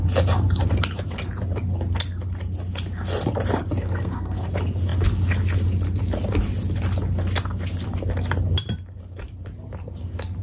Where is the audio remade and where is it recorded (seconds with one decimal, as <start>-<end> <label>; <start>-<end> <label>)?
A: 0.0-3.8 recorded; 3.8-4.5 remade; 4.5-10.4 recorded